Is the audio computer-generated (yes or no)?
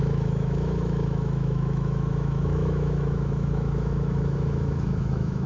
yes